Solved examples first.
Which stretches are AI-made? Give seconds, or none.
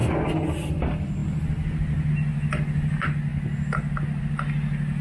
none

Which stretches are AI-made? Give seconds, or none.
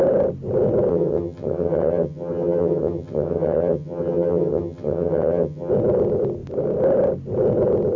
0.9-5.7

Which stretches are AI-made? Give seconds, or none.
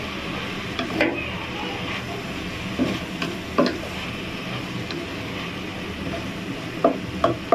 none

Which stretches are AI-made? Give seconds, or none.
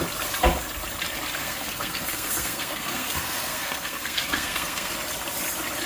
1.4-4.9